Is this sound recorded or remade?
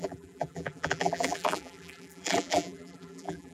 remade